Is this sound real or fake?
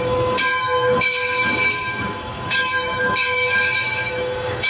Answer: fake